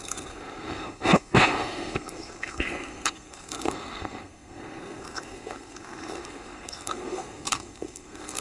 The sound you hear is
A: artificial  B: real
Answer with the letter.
A